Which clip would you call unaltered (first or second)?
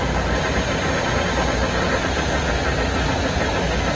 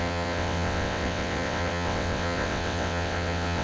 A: first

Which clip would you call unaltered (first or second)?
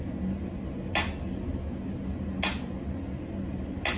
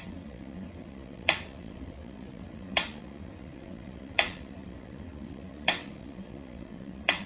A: first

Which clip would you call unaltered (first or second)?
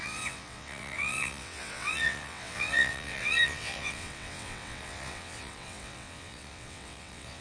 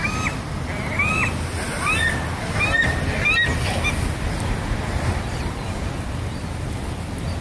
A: second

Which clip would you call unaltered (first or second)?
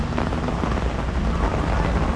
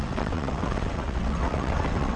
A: first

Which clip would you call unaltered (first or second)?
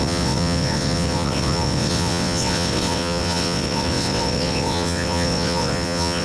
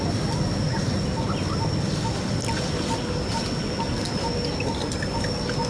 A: second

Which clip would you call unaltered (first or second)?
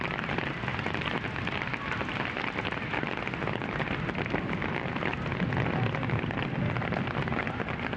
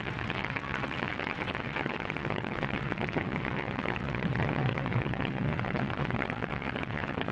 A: first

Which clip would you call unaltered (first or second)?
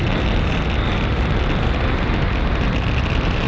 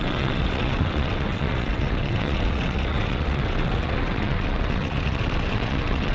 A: first